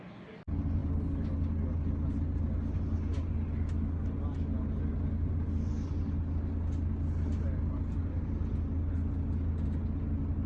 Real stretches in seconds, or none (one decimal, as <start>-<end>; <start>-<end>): 0.0-10.5